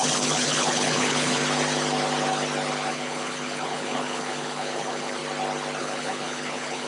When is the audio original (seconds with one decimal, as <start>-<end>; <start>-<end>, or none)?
1.4-2.9; 5.2-5.8